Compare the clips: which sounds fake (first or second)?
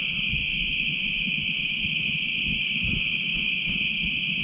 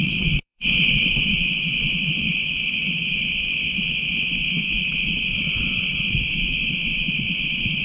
second